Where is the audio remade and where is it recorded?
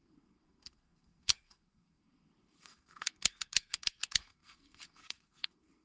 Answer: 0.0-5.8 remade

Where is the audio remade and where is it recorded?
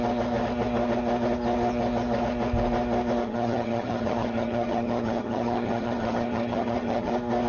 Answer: 0.0-3.2 recorded; 3.2-7.1 remade; 7.1-7.5 recorded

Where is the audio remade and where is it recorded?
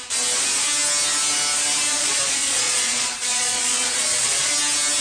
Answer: 0.0-1.9 recorded; 1.9-4.5 remade; 4.5-5.0 recorded